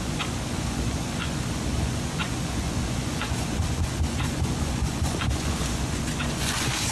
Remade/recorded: remade